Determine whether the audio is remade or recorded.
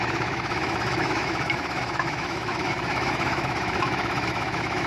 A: remade